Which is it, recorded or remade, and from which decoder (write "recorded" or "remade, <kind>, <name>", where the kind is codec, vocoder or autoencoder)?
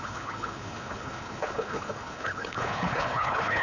remade, codec, HILCodec